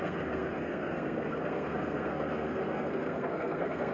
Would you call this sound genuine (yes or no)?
no